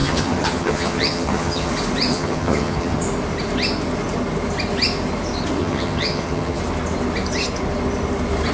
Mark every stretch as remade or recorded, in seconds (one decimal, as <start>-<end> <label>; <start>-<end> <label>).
0.0-1.7 remade; 1.7-2.1 recorded; 2.1-3.0 remade; 3.0-5.6 recorded; 5.6-6.6 remade; 6.6-8.5 recorded